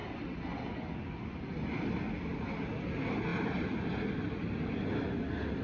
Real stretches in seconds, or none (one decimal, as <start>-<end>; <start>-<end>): 0.0-5.6